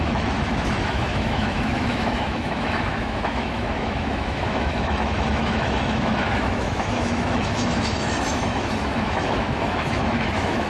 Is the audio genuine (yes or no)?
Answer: no